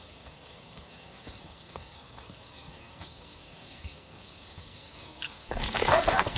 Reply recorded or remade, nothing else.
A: remade